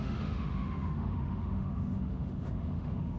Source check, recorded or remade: remade